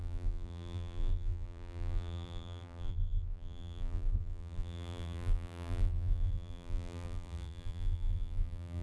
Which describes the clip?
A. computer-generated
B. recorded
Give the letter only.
A